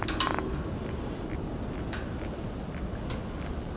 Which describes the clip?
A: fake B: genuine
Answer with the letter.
B